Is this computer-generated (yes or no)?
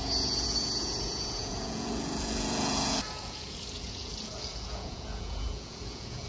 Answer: yes